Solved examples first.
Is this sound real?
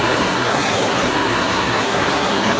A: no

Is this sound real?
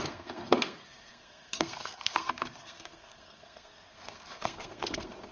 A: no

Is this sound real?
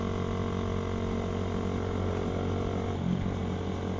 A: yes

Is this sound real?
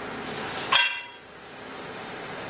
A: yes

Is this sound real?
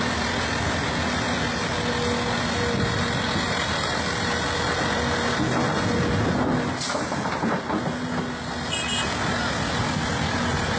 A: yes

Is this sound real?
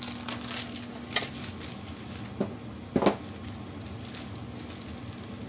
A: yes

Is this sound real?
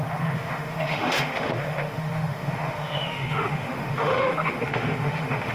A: no